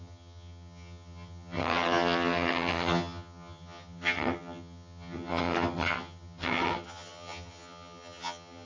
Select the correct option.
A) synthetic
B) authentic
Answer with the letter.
A